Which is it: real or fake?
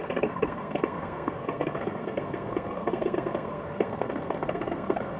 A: fake